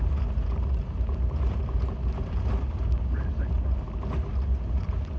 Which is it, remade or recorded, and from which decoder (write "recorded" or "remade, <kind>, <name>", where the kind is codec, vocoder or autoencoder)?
recorded